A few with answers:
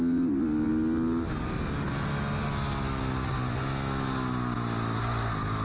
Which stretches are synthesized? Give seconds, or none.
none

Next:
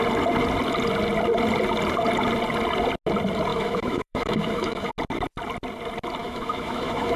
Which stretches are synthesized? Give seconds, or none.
3.5-4.9 (autoencoder, DAC-VAE); 6.2-7.2